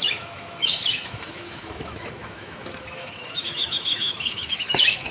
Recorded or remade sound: remade